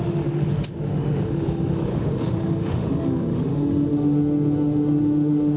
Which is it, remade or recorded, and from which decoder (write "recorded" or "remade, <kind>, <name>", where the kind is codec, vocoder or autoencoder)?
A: remade, autoencoder, DAC-VAE